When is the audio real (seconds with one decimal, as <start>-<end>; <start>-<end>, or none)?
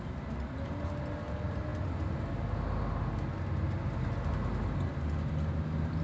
0.0-6.0